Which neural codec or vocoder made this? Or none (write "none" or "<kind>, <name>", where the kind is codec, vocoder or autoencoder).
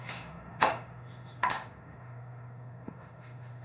autoencoder, DAC-VAE